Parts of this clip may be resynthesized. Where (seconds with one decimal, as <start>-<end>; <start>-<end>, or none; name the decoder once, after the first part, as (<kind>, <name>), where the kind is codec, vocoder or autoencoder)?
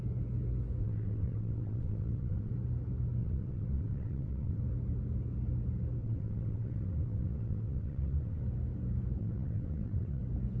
0.8-2.5 (vocoder, WaveNeXt); 3.2-4.6; 6.0-8.4; 9.2-10.2